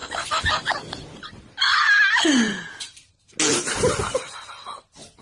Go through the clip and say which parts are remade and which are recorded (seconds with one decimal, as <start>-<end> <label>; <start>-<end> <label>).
0.0-5.2 recorded